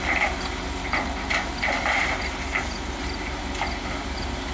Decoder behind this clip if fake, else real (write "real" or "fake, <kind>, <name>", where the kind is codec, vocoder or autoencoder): real